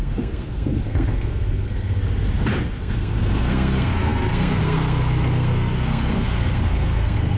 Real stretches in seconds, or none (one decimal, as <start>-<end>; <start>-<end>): 2.0-2.7